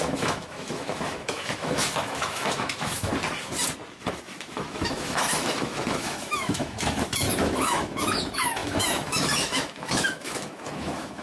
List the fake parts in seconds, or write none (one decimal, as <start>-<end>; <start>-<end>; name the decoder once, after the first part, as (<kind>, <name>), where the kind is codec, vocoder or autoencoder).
0.0-3.1 (autoencoder, DAC-VAE); 4.0-11.2